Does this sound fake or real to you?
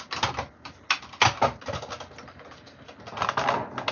real